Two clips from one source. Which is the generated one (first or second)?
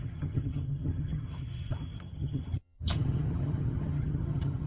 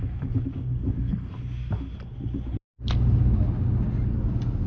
first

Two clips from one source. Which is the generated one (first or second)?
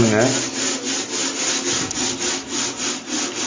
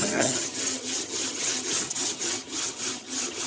second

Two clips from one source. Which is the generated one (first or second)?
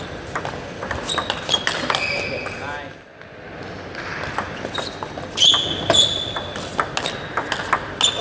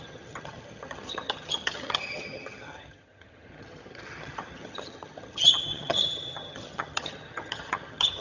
second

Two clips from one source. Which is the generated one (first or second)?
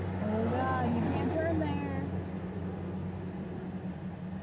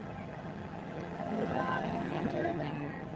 second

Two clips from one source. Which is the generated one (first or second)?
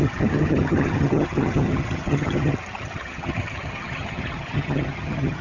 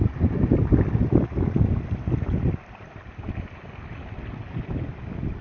first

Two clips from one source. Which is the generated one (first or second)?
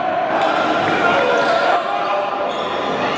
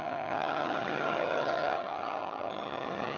second